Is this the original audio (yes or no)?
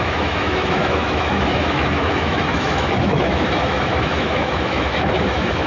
no